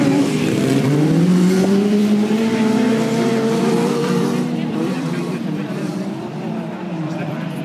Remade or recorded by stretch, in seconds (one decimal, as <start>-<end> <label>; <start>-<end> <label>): 0.0-2.0 remade; 2.0-3.6 recorded; 3.6-7.6 remade